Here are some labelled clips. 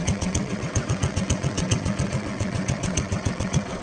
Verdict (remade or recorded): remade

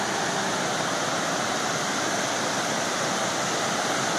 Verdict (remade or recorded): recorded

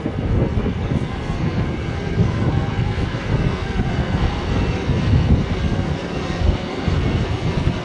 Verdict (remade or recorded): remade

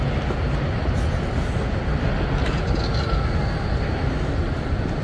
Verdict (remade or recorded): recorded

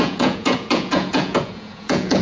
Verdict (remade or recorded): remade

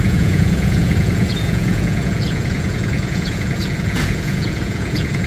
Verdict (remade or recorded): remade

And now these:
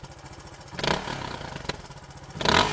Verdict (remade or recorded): recorded